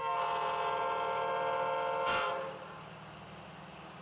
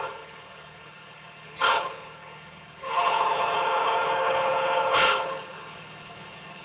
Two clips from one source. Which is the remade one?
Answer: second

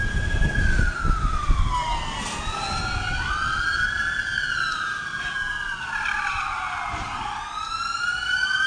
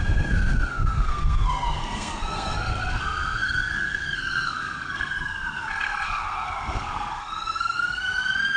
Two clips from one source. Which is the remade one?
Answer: second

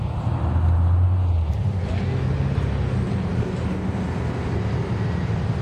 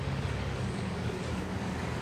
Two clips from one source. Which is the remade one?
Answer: second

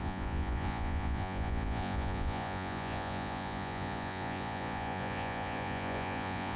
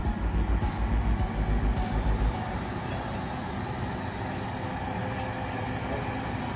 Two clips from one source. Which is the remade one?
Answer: first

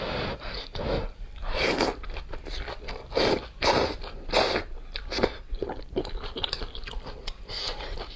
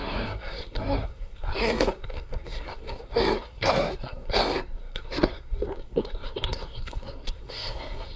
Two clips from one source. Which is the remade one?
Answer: second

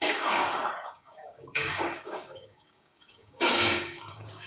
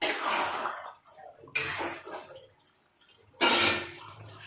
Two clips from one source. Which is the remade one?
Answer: first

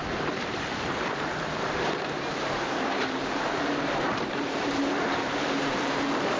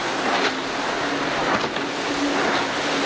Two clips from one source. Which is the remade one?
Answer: first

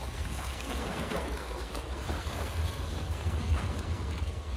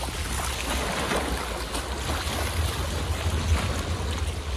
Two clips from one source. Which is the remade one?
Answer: first